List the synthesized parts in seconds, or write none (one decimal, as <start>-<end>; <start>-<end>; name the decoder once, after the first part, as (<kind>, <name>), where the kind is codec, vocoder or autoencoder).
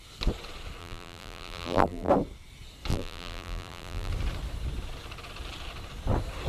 0.8-2.1 (vocoder, BigVGAN v2); 2.9-4.1